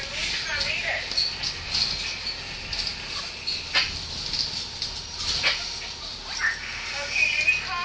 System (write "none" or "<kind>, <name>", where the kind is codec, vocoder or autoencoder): none